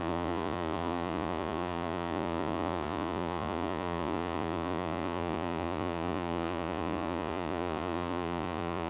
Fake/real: fake